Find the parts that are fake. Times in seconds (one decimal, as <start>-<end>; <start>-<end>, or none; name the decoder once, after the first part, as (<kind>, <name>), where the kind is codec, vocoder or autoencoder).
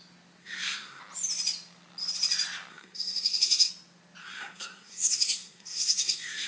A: 0.4-1.0 (codec, SNAC); 2.7-3.7; 4.2-6.5